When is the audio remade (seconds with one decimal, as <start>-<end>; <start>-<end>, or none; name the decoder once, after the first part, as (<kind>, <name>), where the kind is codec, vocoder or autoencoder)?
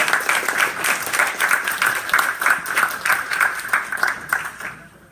none